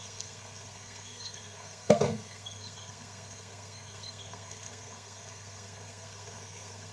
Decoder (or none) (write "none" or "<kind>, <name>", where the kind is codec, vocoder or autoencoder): codec, SNAC